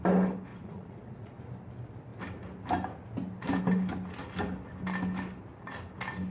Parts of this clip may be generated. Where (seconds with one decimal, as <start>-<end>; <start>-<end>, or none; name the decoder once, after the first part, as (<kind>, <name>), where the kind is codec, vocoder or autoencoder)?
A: 0.5-1.4 (vocoder, Vocos)